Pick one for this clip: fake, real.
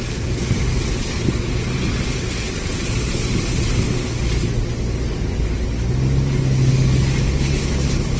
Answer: real